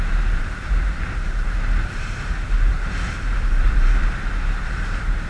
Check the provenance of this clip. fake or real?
fake